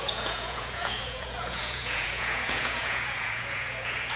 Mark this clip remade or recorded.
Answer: remade